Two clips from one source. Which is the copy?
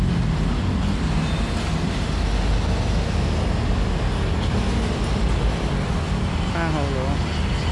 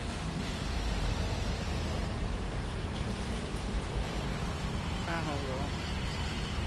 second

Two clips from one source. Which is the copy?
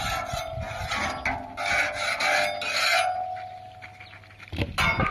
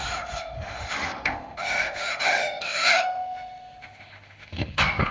second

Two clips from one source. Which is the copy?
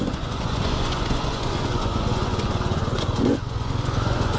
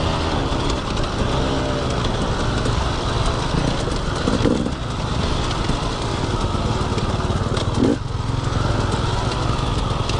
first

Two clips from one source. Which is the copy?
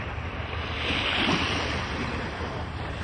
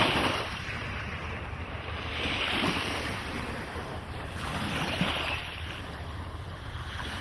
second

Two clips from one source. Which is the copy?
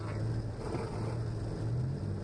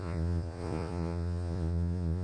second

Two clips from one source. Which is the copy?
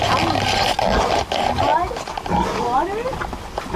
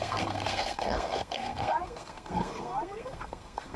second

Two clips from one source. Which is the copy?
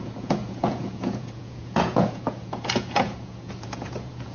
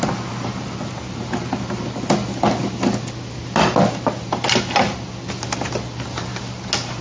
first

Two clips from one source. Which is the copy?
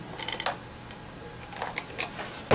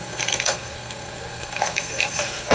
second